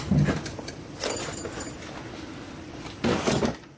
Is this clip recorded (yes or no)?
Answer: yes